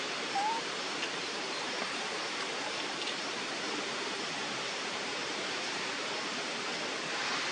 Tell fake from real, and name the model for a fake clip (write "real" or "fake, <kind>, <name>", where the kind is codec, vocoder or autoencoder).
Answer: fake, vocoder, BigVGAN v2